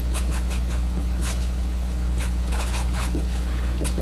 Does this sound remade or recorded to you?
remade